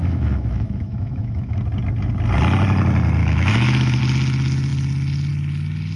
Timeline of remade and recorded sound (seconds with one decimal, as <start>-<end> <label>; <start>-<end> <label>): 0.0-1.6 remade; 1.6-3.2 recorded; 3.2-4.0 remade; 4.0-6.0 recorded